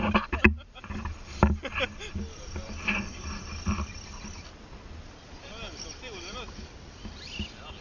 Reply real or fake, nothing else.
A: real